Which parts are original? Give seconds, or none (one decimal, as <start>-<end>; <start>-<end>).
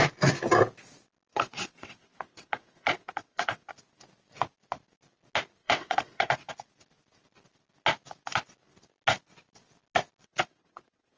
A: 0.0-1.3; 3.7-5.6; 6.5-10.2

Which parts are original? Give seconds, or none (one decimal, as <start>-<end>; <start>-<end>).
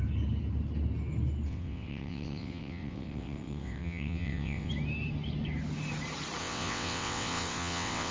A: 0.0-1.5; 4.7-6.4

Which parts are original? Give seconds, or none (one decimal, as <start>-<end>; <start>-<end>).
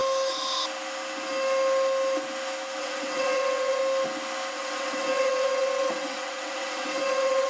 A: 0.0-2.8; 3.8-4.5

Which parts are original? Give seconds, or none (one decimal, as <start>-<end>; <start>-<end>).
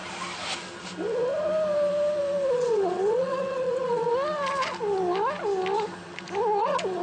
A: 0.0-2.5; 4.1-6.6